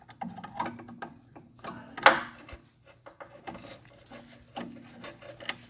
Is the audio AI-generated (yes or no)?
no